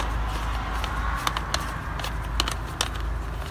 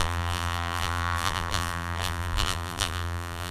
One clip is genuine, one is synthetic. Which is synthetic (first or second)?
second